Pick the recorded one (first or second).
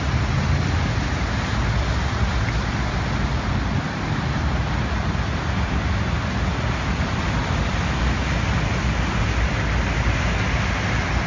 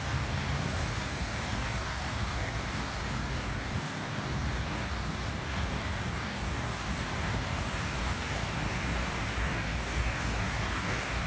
first